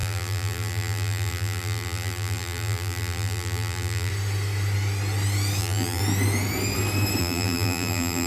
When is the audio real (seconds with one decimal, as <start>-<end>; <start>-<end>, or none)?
4.1-5.6; 6.0-7.2